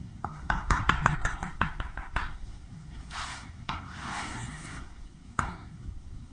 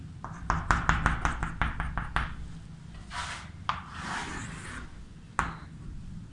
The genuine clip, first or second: second